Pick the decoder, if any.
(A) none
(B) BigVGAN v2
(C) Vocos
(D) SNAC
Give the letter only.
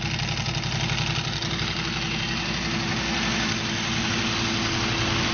A